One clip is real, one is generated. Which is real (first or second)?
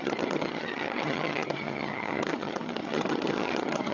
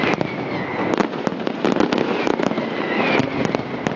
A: second